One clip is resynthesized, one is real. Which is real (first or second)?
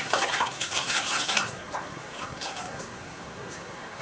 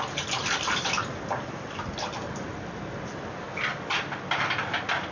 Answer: second